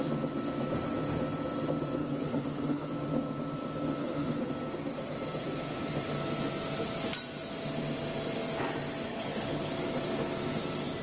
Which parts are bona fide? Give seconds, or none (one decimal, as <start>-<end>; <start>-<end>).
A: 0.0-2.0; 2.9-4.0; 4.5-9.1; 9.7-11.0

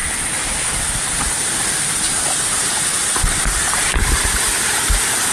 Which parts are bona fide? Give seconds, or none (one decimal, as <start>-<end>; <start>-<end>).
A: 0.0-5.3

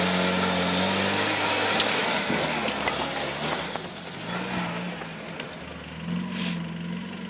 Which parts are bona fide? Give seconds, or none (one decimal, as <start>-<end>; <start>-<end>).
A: 0.0-7.3